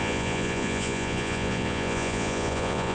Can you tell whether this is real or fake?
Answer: fake